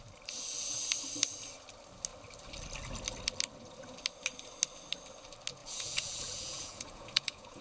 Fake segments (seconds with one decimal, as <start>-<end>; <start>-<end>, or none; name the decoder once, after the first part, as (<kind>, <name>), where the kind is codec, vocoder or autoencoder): 5.6-7.6 (vocoder, Vocos)